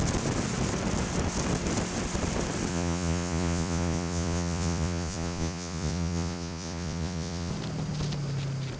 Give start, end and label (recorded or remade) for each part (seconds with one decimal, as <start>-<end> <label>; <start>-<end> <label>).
0.0-2.7 recorded; 2.7-7.5 remade; 7.5-8.8 recorded